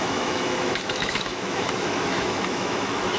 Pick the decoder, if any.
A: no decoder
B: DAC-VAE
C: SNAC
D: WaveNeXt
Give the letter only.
B